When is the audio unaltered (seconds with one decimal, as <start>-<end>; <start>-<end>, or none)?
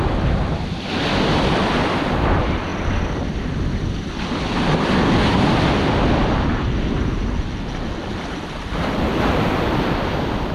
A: 0.0-2.7; 3.7-10.5